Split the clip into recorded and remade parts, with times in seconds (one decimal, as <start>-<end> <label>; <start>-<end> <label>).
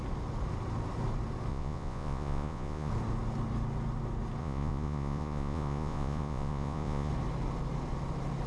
0.0-1.5 recorded; 1.5-2.9 remade; 2.9-4.4 recorded; 4.4-7.1 remade; 7.1-8.5 recorded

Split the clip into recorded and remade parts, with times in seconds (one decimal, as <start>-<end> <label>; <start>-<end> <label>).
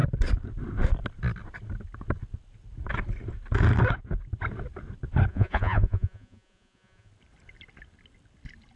0.0-5.3 recorded; 5.3-7.1 remade; 7.1-8.8 recorded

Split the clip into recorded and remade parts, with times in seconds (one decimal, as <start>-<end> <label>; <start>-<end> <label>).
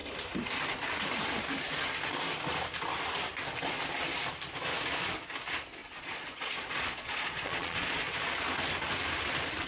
0.0-5.8 recorded; 5.8-8.1 remade; 8.1-9.7 recorded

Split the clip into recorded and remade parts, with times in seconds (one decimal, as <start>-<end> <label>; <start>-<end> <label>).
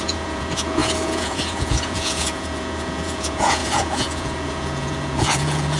0.0-5.8 remade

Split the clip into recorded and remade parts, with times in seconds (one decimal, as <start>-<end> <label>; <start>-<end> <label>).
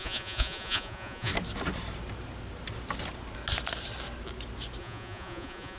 0.0-1.3 remade; 1.3-4.8 recorded; 4.8-5.8 remade